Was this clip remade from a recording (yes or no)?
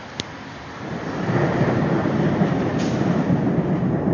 no